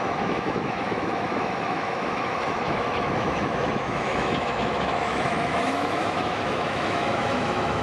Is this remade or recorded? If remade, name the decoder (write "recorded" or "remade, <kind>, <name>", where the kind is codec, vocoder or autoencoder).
remade, autoencoder, DAC-VAE